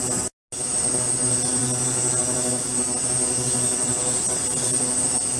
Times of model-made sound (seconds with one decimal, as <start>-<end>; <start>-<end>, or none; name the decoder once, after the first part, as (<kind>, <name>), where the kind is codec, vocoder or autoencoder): none

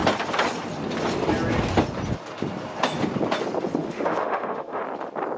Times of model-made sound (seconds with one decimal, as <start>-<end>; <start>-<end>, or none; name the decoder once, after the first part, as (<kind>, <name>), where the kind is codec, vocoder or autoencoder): 3.8-4.8 (autoencoder, DAC-VAE)

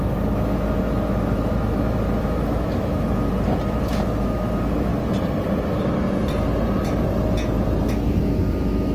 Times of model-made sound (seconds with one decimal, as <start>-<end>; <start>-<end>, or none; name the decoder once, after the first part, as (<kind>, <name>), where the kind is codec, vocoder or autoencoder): 0.0-3.3 (autoencoder, DAC-VAE); 3.8-4.9; 7.8-8.9

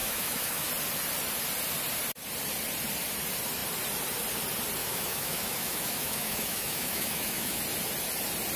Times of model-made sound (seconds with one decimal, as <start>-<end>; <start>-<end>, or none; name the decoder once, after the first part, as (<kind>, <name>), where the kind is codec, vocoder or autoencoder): 0.0-0.7 (autoencoder, DAC-VAE); 4.8-7.6

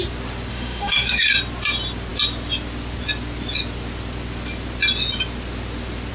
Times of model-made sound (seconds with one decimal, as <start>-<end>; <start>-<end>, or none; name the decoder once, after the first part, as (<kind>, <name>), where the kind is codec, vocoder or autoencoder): 0.5-1.2 (autoencoder, DAC-VAE)

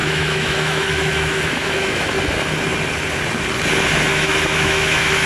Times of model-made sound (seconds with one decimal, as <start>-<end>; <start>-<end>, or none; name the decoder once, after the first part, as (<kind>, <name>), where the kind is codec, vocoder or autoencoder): 0.0-2.2 (autoencoder, DAC-VAE); 4.1-5.3

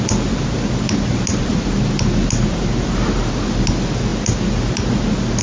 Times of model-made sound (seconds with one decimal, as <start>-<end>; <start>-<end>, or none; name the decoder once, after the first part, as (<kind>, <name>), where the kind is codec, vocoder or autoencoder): none

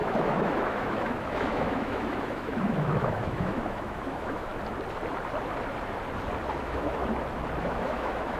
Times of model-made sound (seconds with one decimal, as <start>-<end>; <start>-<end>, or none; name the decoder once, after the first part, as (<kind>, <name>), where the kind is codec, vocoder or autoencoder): 0.0-4.5 (autoencoder, DAC-VAE); 6.6-7.0; 7.6-8.4